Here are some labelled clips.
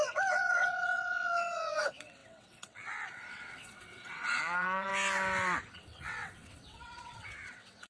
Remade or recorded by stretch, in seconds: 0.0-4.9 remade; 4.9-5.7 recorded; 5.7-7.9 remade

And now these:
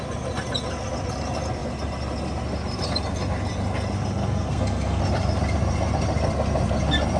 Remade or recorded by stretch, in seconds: 0.0-4.2 recorded; 4.2-5.0 remade; 5.0-7.2 recorded

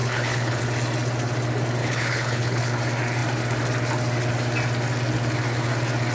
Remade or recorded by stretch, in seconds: 0.0-0.6 remade; 0.6-1.8 recorded; 1.8-2.7 remade; 2.7-6.1 recorded

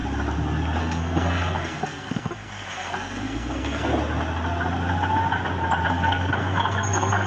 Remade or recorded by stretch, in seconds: 0.0-0.8 recorded; 0.8-3.9 remade; 3.9-5.9 recorded; 5.9-7.3 remade

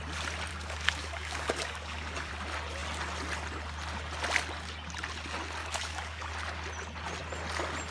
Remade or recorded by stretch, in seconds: 0.0-0.5 recorded; 0.5-2.3 remade; 2.3-5.6 recorded; 5.6-6.3 remade; 6.3-7.9 recorded

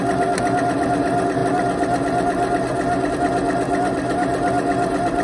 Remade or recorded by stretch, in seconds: 0.0-5.2 recorded